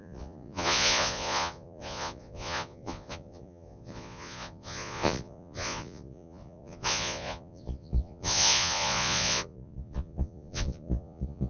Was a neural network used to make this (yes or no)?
yes